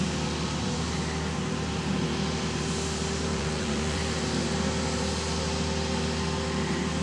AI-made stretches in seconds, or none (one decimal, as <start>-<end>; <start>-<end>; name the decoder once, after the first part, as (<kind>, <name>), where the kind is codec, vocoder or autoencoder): 3.3-4.0 (vocoder, Vocos)

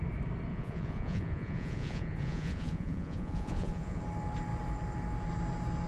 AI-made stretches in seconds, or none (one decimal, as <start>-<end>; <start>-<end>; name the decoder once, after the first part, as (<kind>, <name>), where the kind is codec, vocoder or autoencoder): 0.5-4.0 (vocoder, Vocos)